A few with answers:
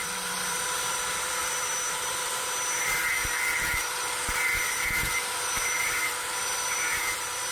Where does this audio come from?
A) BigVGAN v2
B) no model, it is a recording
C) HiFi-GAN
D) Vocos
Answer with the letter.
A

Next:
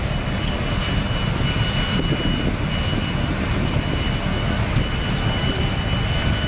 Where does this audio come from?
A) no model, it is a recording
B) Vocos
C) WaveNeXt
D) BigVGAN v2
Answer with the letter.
A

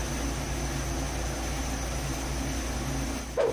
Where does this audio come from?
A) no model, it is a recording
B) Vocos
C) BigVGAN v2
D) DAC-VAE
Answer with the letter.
A